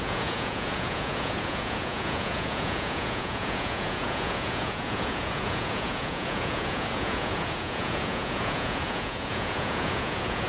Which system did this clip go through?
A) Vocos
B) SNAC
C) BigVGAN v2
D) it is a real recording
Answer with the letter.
A